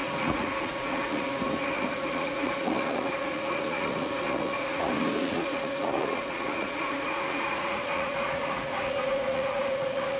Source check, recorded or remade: remade